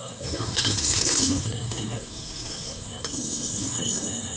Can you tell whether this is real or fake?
fake